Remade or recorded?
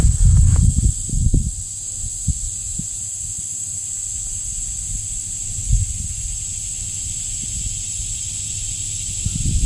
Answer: recorded